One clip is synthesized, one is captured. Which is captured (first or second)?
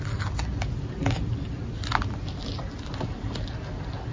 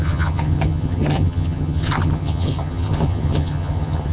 first